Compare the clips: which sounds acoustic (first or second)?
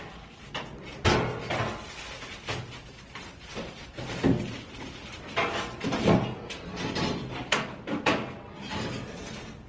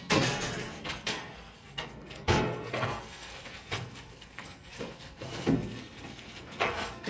first